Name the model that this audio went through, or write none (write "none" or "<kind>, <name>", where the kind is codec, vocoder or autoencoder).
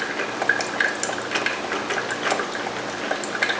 none